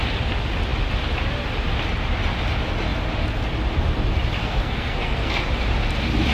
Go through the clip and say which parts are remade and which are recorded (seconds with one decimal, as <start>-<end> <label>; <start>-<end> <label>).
0.0-4.4 recorded; 4.4-5.4 remade; 5.4-6.3 recorded